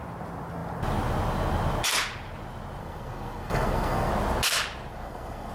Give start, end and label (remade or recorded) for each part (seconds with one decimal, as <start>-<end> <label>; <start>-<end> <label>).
0.0-2.8 recorded; 2.8-4.1 remade; 4.1-4.9 recorded; 4.9-5.5 remade